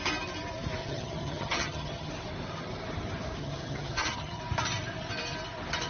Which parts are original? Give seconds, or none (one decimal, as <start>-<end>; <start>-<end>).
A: 0.0-0.8; 2.1-3.4; 4.4-5.9